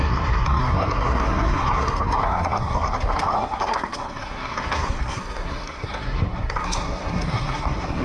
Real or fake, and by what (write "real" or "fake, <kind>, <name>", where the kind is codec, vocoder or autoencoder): fake, codec, SNAC